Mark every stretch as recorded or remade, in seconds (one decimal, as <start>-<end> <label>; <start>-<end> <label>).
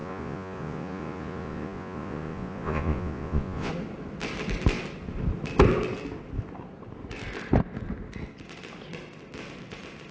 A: 0.0-3.7 remade; 3.7-10.1 recorded